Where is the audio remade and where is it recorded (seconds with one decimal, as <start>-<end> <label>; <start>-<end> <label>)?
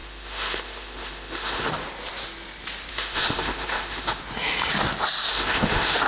0.0-1.7 remade; 1.7-2.9 recorded; 2.9-4.2 remade; 4.2-5.3 recorded; 5.3-6.1 remade